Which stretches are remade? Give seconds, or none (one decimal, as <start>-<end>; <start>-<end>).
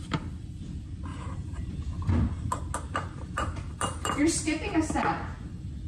1.1-2.1; 2.9-4.3